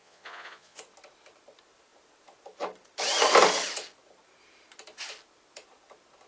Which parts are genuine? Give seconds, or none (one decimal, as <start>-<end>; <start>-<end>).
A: 0.8-6.3